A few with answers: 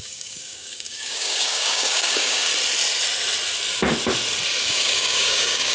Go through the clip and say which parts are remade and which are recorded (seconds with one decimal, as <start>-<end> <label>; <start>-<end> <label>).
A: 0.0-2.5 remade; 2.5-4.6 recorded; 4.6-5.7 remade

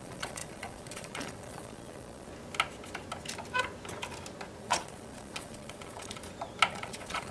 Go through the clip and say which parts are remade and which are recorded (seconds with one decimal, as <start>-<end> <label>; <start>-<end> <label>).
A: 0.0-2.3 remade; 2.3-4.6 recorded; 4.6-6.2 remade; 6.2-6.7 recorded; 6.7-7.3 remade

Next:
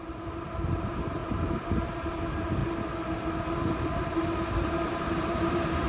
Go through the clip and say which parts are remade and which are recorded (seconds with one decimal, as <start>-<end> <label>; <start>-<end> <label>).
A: 0.0-2.6 remade; 2.6-3.7 recorded; 3.7-5.9 remade

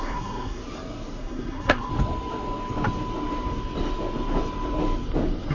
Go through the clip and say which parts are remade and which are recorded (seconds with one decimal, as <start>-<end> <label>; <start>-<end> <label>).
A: 0.0-0.6 remade; 0.6-1.2 recorded; 1.2-1.9 remade; 1.9-5.5 recorded